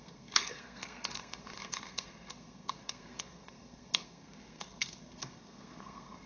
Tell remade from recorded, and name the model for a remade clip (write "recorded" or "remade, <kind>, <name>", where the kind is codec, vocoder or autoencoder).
remade, codec, SNAC